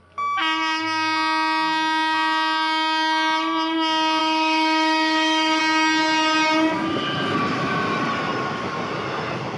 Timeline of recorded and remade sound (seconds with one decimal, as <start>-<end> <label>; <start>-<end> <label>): 0.0-4.2 recorded; 4.2-5.6 remade; 5.6-9.6 recorded